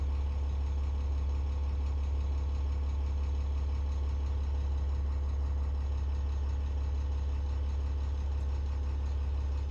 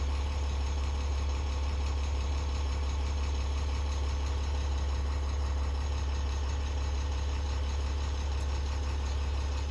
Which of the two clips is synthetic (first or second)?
second